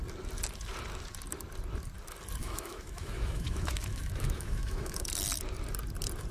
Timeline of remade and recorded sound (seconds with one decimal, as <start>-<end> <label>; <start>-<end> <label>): 0.0-2.4 recorded; 2.4-5.1 remade; 5.1-6.3 recorded